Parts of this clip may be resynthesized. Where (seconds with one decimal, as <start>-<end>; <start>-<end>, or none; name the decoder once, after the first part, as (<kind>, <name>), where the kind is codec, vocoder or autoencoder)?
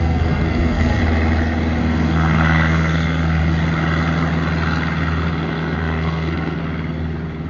0.0-1.0 (codec, SNAC); 1.8-3.4; 5.3-6.6